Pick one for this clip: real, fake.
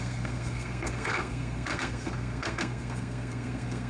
fake